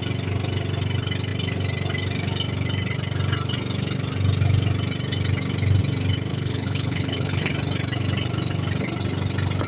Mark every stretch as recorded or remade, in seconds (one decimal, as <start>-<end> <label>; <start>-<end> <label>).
0.0-6.3 recorded; 6.3-7.5 remade; 7.5-9.7 recorded